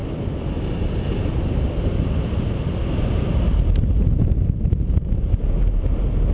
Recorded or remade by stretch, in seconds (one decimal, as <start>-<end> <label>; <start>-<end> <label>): 0.0-6.3 recorded